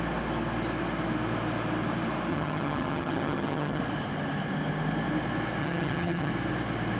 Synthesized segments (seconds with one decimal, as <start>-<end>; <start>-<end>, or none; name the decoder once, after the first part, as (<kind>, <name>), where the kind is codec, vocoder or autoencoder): 2.3-3.8 (vocoder, HiFi-GAN); 5.6-6.3